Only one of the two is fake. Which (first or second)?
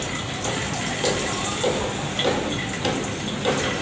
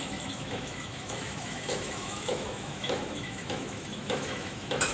second